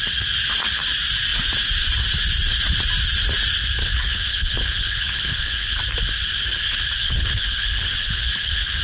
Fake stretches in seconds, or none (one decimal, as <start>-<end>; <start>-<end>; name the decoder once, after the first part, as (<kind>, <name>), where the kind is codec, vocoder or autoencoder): 3.8-5.8 (codec, HILCodec); 7.0-8.8